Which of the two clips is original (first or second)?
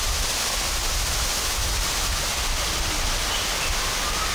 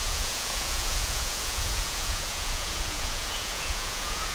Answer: first